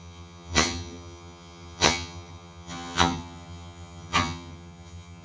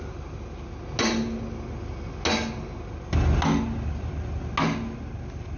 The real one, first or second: second